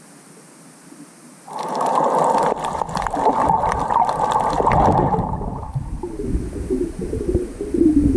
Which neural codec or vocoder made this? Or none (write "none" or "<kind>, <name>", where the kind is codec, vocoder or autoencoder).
none